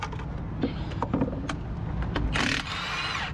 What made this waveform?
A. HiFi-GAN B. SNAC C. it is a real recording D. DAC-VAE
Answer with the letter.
C